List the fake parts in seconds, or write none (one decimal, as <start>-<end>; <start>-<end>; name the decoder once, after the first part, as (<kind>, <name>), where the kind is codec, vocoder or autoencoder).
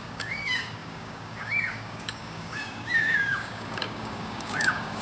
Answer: 0.0-5.0 (codec, DAC)